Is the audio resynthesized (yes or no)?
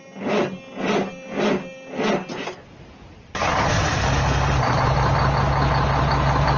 no